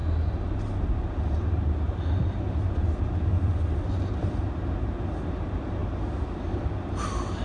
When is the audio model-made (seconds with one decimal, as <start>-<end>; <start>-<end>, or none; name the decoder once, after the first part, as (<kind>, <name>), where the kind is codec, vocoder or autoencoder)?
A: none